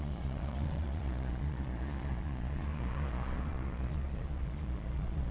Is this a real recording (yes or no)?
no